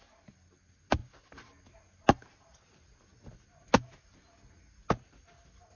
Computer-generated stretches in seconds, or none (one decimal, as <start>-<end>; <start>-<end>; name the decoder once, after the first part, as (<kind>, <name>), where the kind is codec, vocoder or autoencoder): none